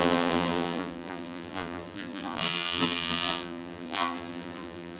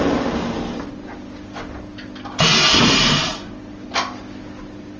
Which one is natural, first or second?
second